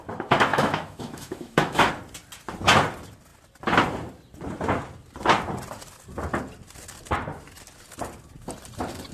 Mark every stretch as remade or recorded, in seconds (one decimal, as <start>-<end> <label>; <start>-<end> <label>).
0.0-0.5 recorded; 0.5-1.9 remade; 1.9-9.1 recorded